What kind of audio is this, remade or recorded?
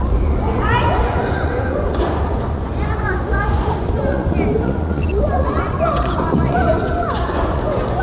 remade